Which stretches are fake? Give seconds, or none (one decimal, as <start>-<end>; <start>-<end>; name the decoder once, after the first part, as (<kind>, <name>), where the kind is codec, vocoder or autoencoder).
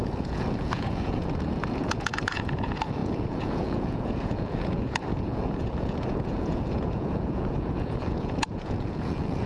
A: 0.0-9.5 (vocoder, Vocos)